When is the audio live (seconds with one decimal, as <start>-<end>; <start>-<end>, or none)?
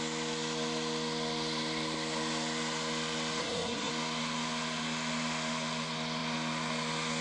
0.0-3.4; 3.9-7.2